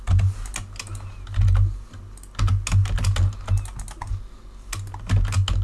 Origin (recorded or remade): recorded